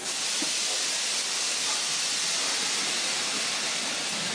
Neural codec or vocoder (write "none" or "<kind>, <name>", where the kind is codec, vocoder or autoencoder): none